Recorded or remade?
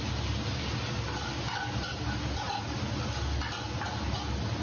recorded